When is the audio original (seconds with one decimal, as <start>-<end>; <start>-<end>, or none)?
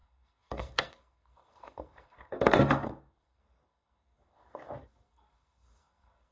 none